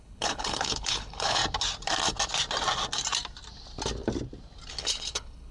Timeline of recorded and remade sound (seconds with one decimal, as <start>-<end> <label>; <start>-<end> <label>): 0.0-1.4 remade; 1.4-4.7 recorded; 4.7-5.5 remade